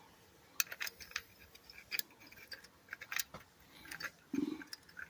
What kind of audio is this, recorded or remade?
recorded